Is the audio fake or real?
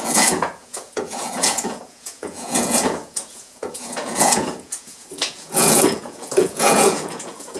fake